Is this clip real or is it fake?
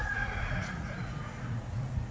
fake